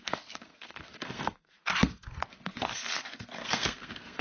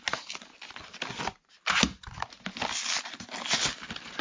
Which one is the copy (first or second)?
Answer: first